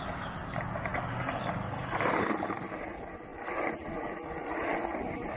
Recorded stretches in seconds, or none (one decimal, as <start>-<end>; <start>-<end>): 0.0-0.9; 1.5-5.4